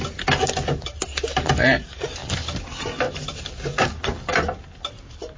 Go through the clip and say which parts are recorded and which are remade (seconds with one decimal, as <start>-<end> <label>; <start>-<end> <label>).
0.0-5.4 recorded